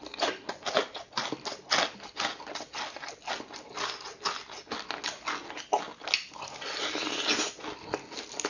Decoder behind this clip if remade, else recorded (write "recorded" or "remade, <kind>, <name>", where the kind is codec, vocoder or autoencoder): recorded